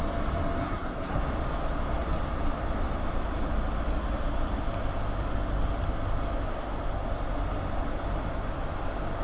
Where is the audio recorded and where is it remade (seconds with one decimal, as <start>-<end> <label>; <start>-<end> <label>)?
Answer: 0.0-0.6 recorded; 0.6-1.2 remade; 1.2-9.2 recorded